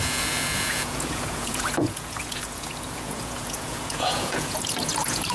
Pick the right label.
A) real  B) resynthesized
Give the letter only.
B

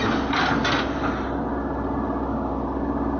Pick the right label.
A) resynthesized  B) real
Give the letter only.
B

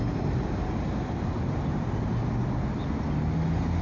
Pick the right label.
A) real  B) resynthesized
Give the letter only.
A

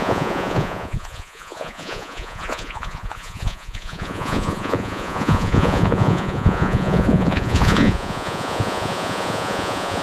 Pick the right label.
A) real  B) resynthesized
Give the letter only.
B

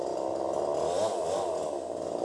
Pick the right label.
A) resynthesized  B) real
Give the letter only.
B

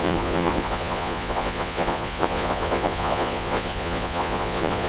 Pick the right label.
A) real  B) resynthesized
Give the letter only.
B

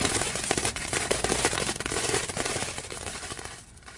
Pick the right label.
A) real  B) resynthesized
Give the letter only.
B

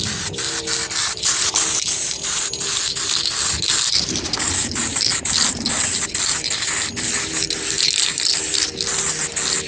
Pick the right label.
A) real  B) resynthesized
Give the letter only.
A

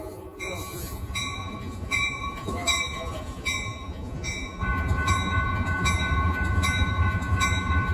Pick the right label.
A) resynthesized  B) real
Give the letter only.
A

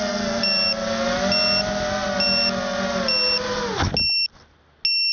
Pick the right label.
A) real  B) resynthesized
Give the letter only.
A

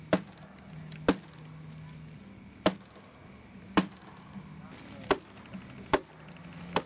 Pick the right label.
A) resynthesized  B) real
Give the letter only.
B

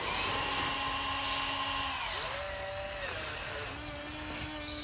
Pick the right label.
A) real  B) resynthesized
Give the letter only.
A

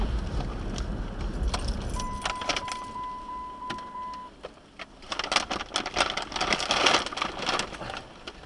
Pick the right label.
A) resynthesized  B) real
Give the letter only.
B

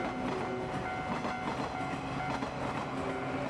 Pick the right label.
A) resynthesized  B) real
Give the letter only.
B